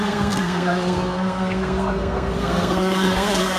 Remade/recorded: remade